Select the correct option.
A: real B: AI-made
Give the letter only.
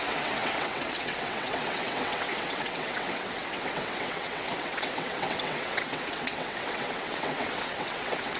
B